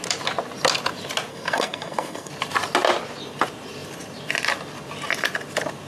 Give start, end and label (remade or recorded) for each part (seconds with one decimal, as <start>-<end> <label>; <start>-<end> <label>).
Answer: 0.0-1.3 recorded; 1.3-2.3 remade; 2.3-5.9 recorded